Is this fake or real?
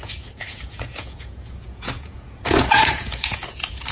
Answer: fake